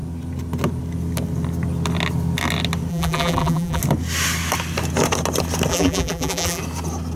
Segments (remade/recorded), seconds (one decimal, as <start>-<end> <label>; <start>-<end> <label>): 0.0-2.9 recorded; 2.9-3.8 remade; 3.8-5.7 recorded; 5.7-6.6 remade; 6.6-7.2 recorded

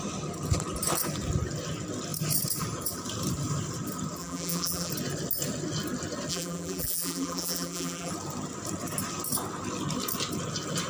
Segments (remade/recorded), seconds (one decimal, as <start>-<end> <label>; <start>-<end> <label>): 0.0-4.2 recorded; 4.2-4.9 remade; 4.9-6.3 recorded; 6.3-8.1 remade; 8.1-10.9 recorded

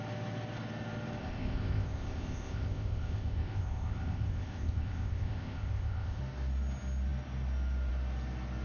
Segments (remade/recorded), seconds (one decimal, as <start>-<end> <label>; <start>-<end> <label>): 0.0-1.2 recorded; 1.2-6.2 remade; 6.2-8.6 recorded